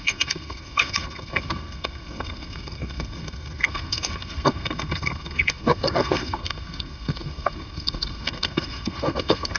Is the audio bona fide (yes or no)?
no